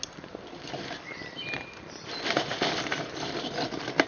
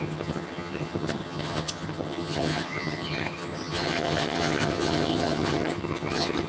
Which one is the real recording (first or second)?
first